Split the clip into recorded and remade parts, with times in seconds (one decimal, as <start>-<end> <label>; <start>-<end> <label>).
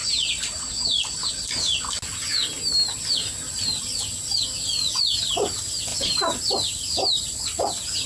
0.0-8.1 recorded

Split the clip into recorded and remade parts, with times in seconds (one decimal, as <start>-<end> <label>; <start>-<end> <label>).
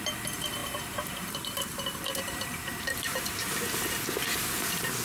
0.0-0.6 recorded; 0.6-3.6 remade; 3.6-5.0 recorded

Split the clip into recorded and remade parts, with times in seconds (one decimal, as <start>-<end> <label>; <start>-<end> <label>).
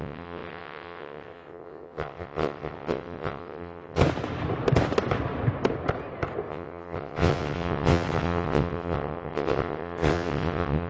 0.0-4.0 remade; 4.0-6.5 recorded; 6.5-10.9 remade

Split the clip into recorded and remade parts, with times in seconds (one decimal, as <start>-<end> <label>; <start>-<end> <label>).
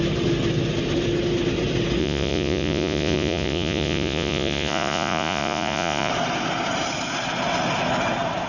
0.0-2.0 recorded; 2.0-6.1 remade; 6.1-8.5 recorded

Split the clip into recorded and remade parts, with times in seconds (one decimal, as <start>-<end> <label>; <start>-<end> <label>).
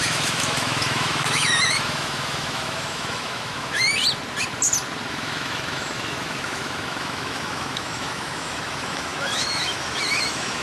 0.0-3.9 remade; 3.9-5.1 recorded; 5.1-10.6 remade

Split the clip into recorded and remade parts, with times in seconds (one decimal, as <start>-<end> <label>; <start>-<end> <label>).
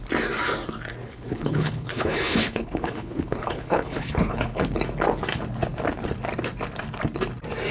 0.0-1.0 recorded; 1.0-4.6 remade; 4.6-7.7 recorded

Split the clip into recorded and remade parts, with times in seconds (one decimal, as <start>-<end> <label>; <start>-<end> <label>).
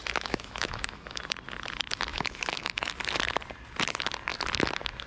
0.0-1.2 remade; 1.2-2.1 recorded; 2.1-2.9 remade; 2.9-5.1 recorded